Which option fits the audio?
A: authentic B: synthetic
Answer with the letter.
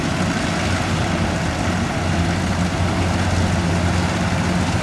A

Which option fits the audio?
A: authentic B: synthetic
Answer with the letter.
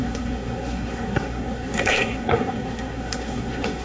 B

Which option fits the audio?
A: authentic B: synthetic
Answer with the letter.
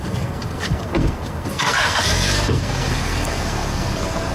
B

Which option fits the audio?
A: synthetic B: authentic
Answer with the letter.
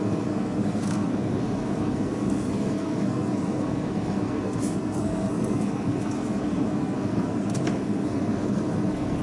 A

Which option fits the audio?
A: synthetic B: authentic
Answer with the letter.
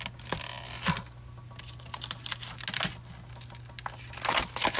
B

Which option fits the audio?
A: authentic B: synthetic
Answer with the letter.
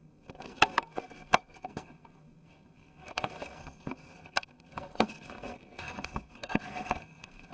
B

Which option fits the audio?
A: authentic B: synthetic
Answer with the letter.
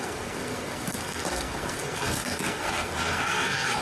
B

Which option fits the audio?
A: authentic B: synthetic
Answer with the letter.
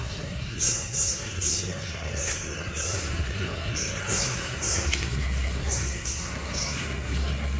B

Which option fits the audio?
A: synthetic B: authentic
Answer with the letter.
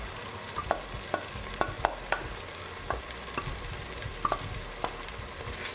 B